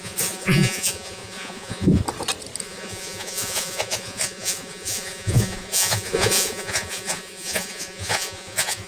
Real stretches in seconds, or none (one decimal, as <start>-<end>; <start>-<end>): 2.0-2.6